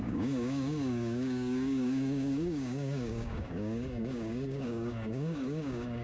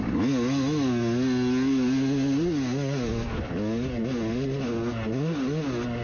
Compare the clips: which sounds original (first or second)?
second